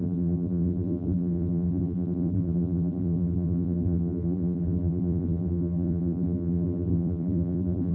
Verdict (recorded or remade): remade